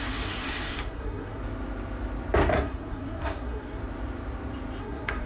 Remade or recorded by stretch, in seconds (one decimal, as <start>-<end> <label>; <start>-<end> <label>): 0.0-1.4 remade; 1.4-2.5 recorded; 2.5-3.8 remade; 3.8-4.8 recorded; 4.8-5.3 remade